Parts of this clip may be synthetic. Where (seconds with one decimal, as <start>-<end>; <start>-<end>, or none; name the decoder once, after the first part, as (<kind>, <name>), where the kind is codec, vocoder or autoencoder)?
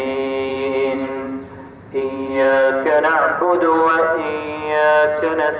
0.5-3.9 (vocoder, BigVGAN v2)